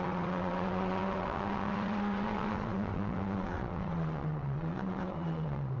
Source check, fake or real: fake